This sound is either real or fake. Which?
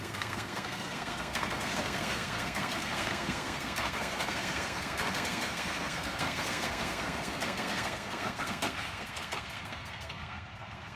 fake